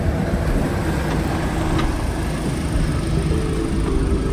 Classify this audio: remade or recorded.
recorded